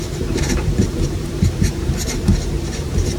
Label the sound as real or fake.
fake